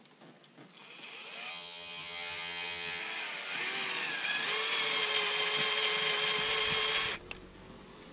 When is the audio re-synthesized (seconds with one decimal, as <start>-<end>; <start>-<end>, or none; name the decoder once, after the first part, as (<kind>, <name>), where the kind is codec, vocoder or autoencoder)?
1.5-3.0 (vocoder, HiFi-GAN)